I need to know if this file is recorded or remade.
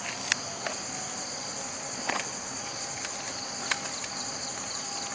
recorded